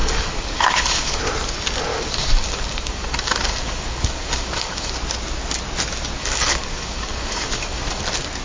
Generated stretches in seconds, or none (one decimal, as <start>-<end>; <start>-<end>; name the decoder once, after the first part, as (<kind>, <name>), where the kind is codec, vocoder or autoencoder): 0.0-1.2 (codec, DAC); 1.9-4.9; 6.2-8.0